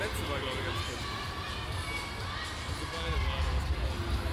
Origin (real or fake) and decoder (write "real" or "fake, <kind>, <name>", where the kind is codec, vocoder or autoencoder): real